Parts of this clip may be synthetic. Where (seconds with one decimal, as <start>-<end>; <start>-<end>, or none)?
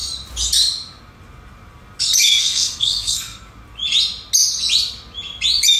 2.4-3.4